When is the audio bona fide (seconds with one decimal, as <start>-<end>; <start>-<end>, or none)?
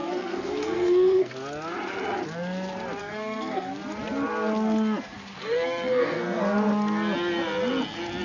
1.3-3.0; 3.7-5.4; 6.4-8.2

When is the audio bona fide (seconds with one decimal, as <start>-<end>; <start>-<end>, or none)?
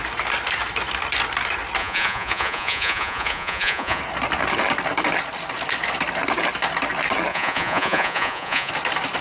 0.0-1.8; 4.0-7.3; 8.7-9.2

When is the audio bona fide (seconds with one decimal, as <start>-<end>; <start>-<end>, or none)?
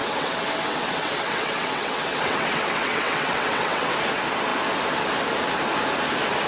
3.9-6.5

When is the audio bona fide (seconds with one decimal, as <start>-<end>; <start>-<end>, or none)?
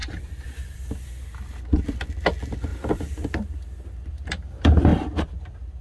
1.2-4.9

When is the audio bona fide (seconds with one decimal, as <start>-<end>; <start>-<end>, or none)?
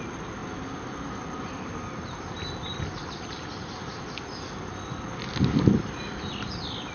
0.0-6.9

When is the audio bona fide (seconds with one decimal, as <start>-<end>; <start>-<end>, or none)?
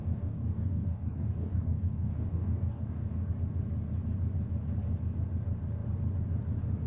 3.3-6.9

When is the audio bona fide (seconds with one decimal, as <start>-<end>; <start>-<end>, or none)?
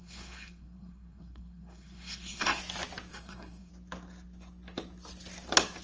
2.6-3.1; 3.7-5.8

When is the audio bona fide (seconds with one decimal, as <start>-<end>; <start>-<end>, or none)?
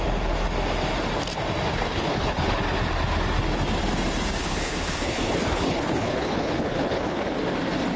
0.0-1.7; 2.6-4.4; 7.2-8.0